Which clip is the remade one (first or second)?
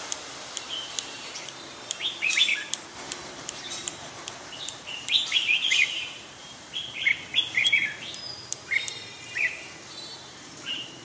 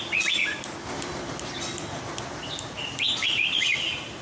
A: first